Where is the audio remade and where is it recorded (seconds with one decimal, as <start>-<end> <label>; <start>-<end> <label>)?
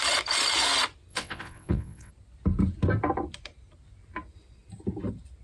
0.0-1.1 recorded; 1.1-2.1 remade; 2.1-5.4 recorded